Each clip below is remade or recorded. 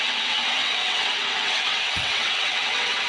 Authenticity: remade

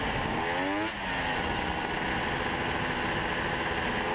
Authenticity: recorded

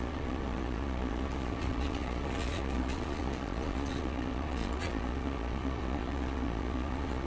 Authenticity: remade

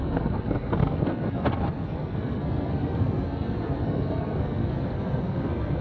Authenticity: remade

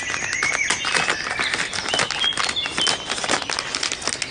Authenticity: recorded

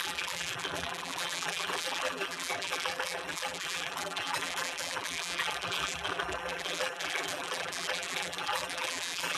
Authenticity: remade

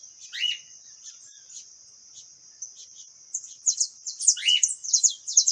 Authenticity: remade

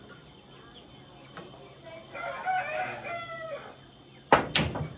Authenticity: recorded